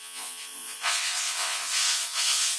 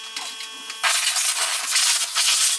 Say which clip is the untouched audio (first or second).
second